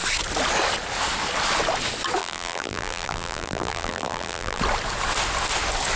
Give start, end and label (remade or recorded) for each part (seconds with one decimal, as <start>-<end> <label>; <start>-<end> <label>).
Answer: 0.0-2.2 recorded; 2.2-4.6 remade; 4.6-6.0 recorded